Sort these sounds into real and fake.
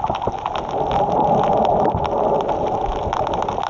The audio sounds real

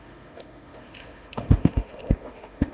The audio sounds fake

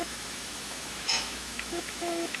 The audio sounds fake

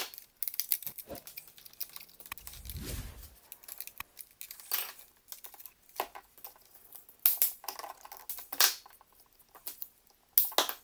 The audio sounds real